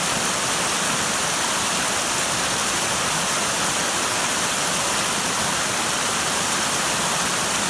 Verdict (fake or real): real